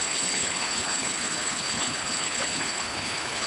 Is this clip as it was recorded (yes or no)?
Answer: no